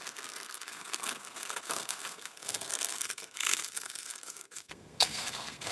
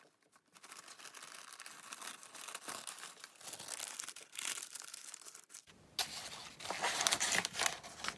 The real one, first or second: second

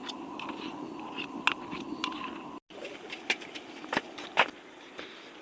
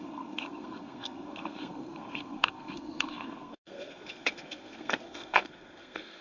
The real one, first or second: first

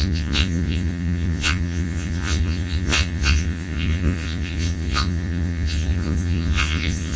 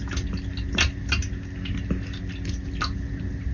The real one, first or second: second